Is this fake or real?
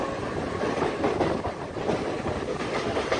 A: real